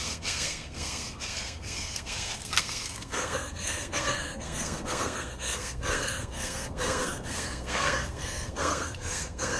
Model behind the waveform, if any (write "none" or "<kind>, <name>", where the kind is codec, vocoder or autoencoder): codec, SNAC